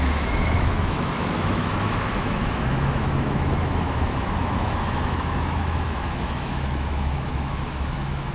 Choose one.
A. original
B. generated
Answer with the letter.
B